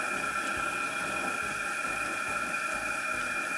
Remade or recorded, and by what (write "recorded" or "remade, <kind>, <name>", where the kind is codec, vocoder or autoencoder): recorded